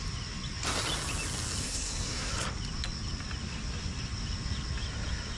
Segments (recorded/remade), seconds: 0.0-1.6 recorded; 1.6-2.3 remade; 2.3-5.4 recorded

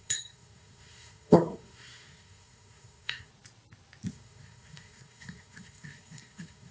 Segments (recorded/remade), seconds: 0.0-3.3 remade; 3.3-4.1 recorded; 4.1-6.7 remade